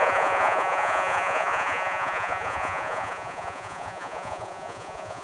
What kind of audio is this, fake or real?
fake